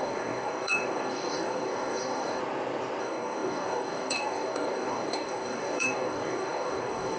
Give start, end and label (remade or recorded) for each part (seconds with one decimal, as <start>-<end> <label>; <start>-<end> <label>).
0.0-2.4 remade; 2.4-3.0 recorded; 3.0-7.2 remade